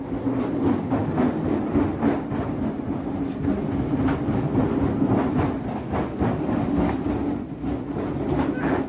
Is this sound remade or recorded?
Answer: recorded